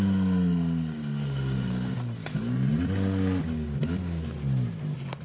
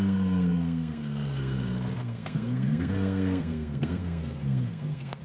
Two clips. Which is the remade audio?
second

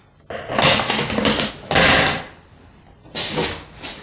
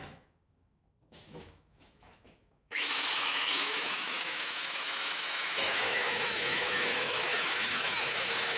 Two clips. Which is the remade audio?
second